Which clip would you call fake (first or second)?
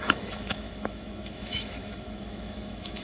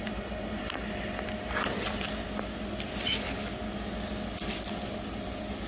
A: first